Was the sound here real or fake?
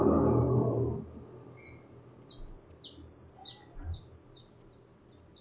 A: real